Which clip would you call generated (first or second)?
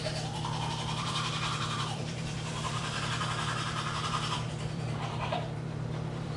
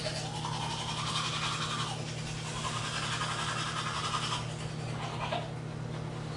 first